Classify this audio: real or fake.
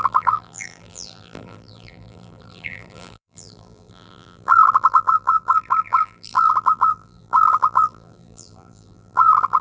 fake